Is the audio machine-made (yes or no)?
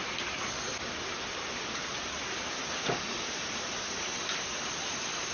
no